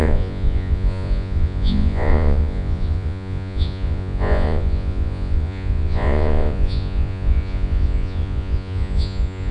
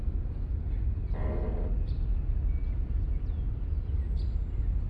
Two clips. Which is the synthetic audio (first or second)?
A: first